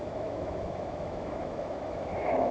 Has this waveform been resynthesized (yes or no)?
yes